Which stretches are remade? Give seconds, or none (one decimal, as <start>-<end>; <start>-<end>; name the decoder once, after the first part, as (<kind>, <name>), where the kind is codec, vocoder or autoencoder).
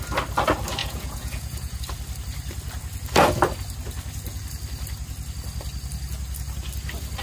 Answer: 0.8-1.8 (vocoder, Vocos)